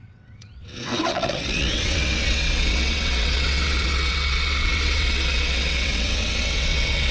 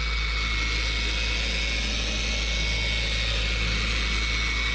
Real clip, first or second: second